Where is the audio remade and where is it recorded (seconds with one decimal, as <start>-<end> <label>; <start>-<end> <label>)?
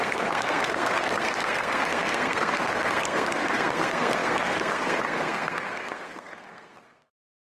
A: 0.0-7.6 remade